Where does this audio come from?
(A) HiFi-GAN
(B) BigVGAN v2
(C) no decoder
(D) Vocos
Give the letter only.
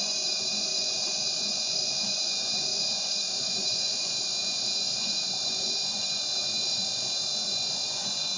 D